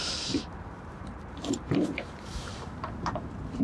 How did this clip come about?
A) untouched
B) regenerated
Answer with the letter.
B